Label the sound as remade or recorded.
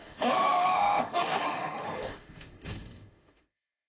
remade